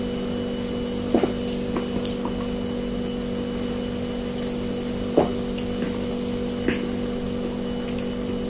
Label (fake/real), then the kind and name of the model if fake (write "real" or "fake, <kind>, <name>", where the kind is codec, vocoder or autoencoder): real